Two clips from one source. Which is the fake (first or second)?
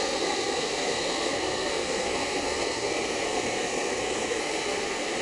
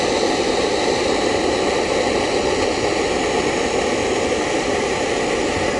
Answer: first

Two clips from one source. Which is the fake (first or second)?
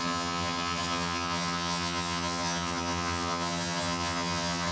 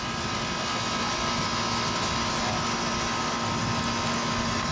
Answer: first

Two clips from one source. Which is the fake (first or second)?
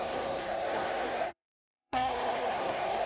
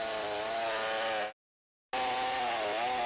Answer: first